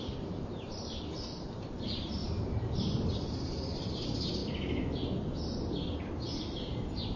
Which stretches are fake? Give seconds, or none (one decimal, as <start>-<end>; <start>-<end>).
0.0-2.2; 3.1-4.4; 6.4-7.2